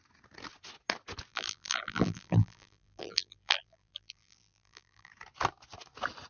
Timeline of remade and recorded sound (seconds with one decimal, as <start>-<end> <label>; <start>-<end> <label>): 0.0-1.3 recorded; 1.3-5.1 remade; 5.1-6.3 recorded